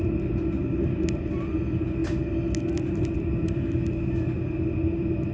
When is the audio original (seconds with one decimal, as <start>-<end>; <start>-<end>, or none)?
0.0-5.3